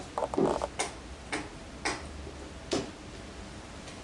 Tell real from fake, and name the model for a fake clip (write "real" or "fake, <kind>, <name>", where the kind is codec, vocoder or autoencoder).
real